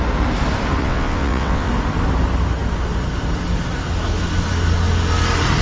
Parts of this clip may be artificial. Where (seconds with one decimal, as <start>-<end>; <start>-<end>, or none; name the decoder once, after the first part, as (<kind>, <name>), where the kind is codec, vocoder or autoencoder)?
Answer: 0.8-1.7 (vocoder, WaveNeXt)